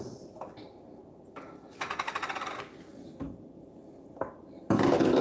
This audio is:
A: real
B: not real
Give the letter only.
A